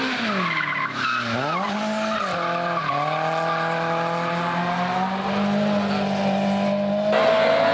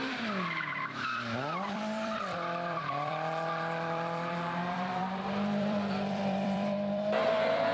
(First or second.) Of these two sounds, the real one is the first